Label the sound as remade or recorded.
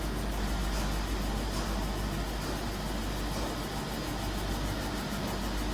recorded